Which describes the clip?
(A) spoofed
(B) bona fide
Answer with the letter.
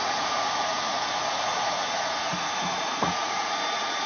A